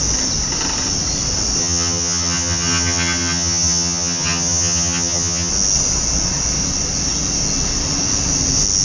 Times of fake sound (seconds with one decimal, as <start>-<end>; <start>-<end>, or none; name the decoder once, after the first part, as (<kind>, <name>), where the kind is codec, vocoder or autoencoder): 1.6-5.5 (vocoder, HiFi-GAN)